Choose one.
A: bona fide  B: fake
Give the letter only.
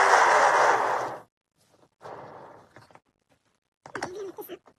A